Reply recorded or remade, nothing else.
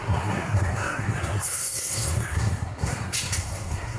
remade